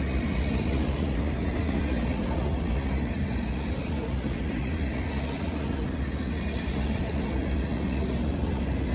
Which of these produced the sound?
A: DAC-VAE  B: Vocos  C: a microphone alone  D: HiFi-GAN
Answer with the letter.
B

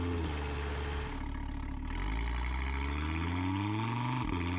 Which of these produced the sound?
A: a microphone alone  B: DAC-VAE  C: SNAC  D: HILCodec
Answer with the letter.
A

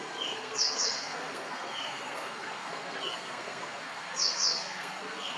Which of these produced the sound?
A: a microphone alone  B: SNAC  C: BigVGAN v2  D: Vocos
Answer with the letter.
B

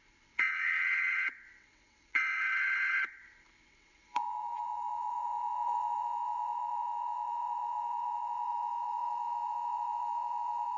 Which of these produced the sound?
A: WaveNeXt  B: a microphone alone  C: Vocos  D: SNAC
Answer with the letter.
A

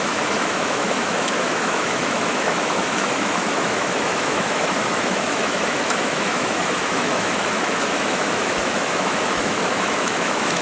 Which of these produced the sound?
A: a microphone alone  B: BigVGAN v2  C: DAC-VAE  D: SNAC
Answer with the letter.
C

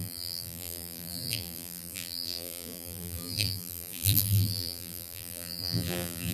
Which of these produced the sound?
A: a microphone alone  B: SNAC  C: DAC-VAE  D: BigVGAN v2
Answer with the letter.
D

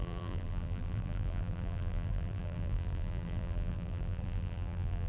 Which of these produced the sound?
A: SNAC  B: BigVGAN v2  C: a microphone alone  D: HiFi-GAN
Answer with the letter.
B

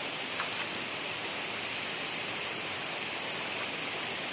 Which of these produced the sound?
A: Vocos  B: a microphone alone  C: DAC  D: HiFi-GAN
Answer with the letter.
B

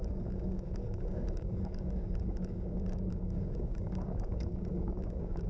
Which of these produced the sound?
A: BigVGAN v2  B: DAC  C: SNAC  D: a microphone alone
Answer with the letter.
B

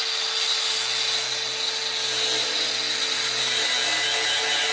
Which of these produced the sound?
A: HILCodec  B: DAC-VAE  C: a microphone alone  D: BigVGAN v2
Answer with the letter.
C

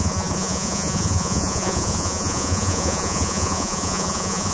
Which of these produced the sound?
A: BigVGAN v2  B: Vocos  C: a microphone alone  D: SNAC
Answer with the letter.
B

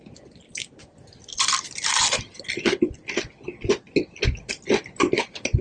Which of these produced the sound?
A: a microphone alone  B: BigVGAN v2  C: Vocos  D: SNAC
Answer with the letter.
A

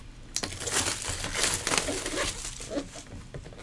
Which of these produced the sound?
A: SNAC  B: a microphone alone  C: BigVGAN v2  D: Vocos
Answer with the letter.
B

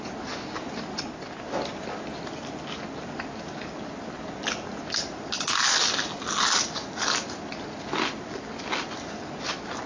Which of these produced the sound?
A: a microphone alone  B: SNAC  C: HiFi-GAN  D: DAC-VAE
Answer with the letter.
A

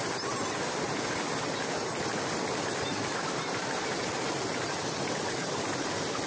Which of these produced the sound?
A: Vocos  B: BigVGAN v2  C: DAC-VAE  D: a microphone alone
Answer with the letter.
D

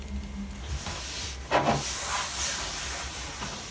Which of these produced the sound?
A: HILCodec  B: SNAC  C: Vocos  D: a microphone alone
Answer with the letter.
D